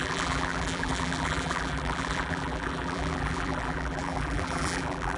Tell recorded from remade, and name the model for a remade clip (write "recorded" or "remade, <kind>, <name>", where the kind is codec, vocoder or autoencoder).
remade, vocoder, BigVGAN v2